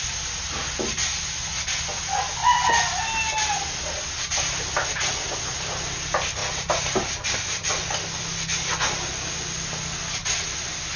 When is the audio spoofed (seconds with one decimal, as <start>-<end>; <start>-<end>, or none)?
none